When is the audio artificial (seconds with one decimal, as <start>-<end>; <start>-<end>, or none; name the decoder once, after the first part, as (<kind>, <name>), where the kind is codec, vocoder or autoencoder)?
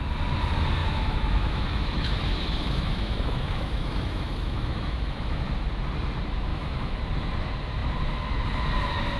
0.8-5.4 (autoencoder, DAC-VAE); 6.5-7.0